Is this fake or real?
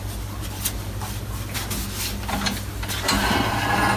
real